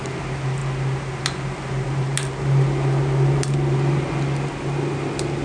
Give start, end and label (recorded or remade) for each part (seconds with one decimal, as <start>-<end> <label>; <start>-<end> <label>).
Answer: 0.0-5.4 recorded